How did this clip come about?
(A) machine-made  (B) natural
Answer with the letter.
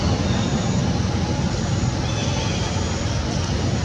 B